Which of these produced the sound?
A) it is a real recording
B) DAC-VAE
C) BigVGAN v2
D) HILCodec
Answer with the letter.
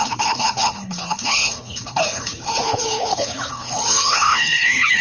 D